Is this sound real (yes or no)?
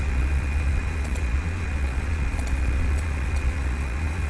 no